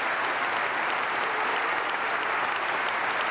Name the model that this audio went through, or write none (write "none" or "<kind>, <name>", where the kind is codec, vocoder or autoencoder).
none